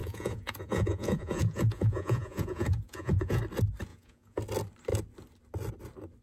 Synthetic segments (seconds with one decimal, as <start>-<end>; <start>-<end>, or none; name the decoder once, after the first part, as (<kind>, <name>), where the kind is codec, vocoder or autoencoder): 0.0-3.4 (vocoder, Vocos); 3.9-4.4